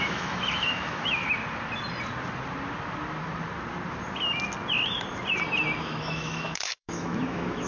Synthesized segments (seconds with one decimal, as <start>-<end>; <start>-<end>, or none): 0.0-1.2; 5.8-7.7